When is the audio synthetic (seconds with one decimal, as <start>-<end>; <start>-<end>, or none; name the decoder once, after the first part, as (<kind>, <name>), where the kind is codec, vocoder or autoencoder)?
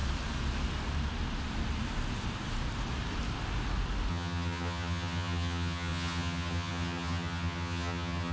4.1-8.3 (vocoder, HiFi-GAN)